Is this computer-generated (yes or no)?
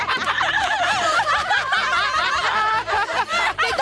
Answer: yes